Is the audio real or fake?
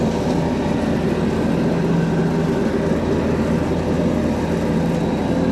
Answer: real